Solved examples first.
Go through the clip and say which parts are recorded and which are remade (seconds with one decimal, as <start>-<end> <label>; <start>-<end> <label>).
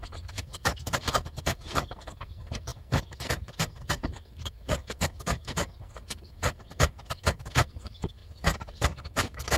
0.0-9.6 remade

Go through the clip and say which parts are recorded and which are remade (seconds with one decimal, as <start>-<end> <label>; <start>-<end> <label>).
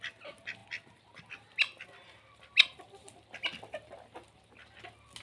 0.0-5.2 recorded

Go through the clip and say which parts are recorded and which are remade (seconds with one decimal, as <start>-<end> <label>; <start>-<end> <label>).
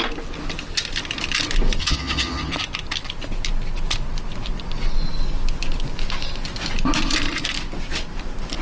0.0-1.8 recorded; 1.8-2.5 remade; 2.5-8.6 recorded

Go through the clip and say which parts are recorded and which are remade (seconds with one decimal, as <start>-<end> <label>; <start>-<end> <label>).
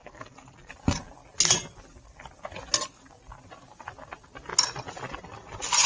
0.0-5.9 recorded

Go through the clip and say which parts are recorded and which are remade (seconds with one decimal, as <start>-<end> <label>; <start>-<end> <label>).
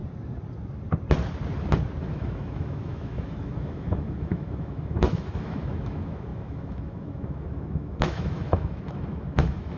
0.0-2.0 recorded; 2.0-9.8 remade